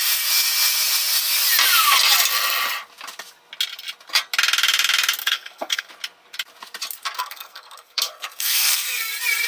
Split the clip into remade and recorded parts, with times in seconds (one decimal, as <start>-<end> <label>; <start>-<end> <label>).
0.0-5.2 recorded; 5.2-5.9 remade; 5.9-7.2 recorded; 7.2-9.1 remade; 9.1-9.5 recorded

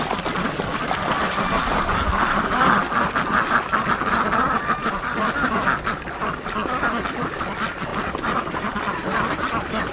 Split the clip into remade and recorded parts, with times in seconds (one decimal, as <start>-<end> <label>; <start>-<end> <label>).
0.0-9.9 recorded

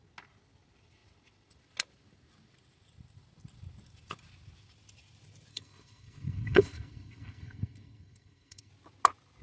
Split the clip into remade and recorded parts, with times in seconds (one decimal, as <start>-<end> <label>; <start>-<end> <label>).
0.0-5.5 recorded; 5.5-8.7 remade; 8.7-9.4 recorded

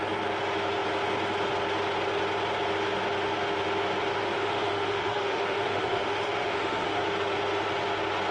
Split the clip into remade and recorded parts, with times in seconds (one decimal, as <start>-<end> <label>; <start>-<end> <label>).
0.0-4.2 recorded; 4.2-7.0 remade; 7.0-8.3 recorded

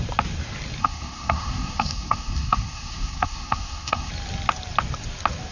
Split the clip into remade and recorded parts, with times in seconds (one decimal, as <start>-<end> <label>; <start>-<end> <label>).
0.0-0.8 recorded; 0.8-4.1 remade; 4.1-5.5 recorded

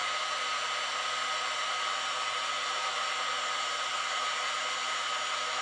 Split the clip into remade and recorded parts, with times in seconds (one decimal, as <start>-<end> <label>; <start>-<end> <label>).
0.0-5.6 recorded

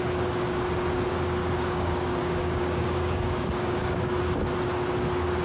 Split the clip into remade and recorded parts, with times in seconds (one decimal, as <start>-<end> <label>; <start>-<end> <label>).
0.0-1.4 recorded; 1.4-4.2 remade; 4.2-5.4 recorded

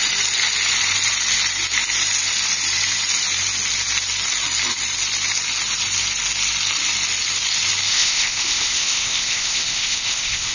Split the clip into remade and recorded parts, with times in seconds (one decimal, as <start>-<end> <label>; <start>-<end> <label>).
0.0-7.9 recorded; 7.9-10.5 remade